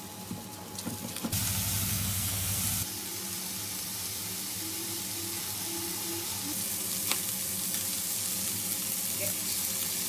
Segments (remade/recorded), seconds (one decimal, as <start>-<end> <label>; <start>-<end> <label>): 0.0-1.9 recorded; 1.9-2.6 remade; 2.6-10.1 recorded